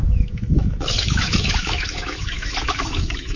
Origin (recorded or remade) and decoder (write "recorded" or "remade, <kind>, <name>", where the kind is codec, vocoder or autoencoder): remade, autoencoder, DAC-VAE